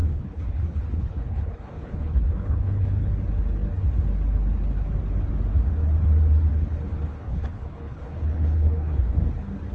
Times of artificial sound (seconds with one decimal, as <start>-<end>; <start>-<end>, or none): 0.0-3.1; 7.1-9.2